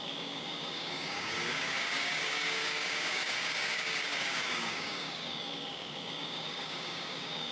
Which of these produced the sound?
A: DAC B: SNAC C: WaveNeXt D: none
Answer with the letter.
A